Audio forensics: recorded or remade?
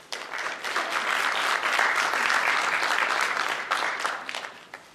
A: remade